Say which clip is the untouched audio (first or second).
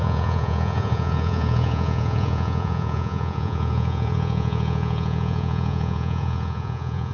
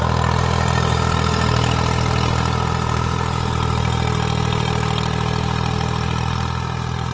second